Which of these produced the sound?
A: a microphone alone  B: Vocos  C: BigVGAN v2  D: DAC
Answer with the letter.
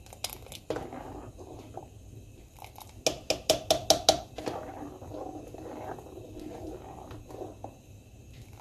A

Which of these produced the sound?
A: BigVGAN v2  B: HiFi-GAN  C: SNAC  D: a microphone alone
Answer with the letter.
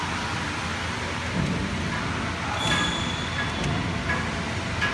D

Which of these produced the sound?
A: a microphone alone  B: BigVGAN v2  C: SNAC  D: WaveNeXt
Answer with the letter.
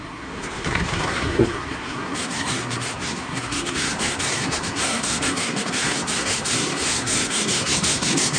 C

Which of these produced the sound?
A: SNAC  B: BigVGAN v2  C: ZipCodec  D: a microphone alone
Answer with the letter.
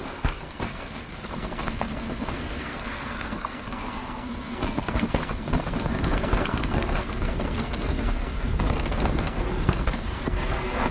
A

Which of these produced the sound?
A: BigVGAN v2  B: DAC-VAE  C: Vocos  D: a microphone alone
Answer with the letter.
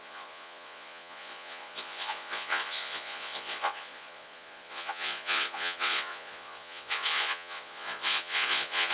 C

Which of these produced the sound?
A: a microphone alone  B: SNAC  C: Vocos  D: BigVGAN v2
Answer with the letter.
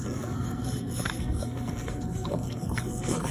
B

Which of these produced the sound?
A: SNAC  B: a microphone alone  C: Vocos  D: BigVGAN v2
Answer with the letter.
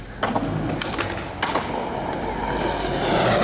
B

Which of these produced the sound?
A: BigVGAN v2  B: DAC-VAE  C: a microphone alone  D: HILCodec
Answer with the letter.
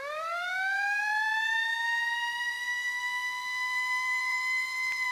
A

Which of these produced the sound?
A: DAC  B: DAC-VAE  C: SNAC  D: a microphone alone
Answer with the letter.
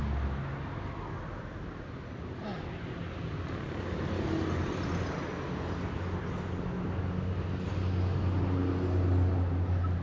D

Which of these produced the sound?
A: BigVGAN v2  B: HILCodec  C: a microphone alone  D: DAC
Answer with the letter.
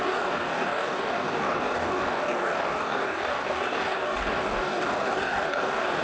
D